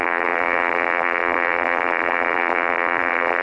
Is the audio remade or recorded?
remade